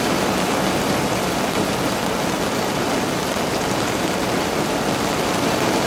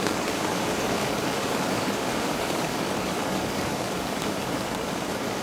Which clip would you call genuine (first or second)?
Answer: first